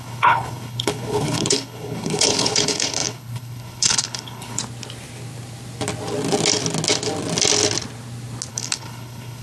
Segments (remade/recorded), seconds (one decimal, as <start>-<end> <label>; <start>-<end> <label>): 0.0-4.6 remade; 4.6-8.5 recorded; 8.5-9.4 remade